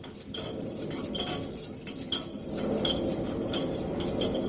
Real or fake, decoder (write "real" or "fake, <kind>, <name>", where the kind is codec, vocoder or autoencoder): real